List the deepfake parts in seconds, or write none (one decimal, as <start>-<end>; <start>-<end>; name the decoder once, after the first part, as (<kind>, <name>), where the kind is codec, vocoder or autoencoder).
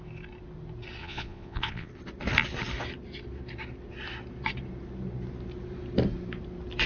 1.0-1.9 (vocoder, Vocos)